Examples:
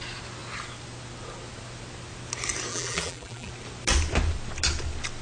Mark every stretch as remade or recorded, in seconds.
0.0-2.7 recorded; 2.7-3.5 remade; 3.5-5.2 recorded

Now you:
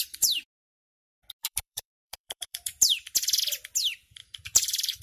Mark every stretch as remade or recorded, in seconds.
0.0-1.4 recorded; 1.4-3.4 remade; 3.4-4.2 recorded; 4.2-5.0 remade

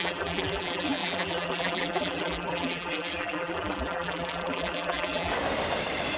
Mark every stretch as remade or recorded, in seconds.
0.0-5.3 remade; 5.3-6.2 recorded

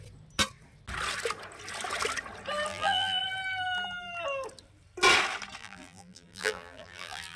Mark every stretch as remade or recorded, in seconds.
0.0-2.7 recorded; 2.7-3.2 remade; 3.2-5.6 recorded; 5.6-7.4 remade

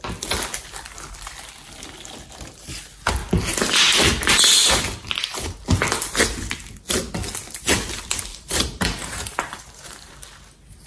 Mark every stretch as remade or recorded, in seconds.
0.0-8.3 recorded; 8.3-10.1 remade; 10.1-10.9 recorded

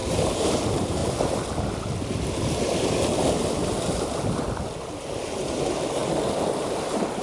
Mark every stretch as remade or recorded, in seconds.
0.0-1.0 remade; 1.0-5.2 recorded; 5.2-6.0 remade; 6.0-6.6 recorded; 6.6-7.2 remade